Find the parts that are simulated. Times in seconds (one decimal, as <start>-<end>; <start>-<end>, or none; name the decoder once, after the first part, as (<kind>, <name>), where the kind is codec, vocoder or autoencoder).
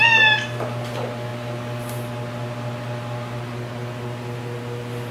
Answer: none